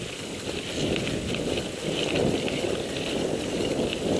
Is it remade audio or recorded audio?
recorded